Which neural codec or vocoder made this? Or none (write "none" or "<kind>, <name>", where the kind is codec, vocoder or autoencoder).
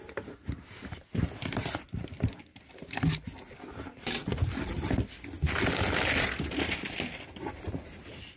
none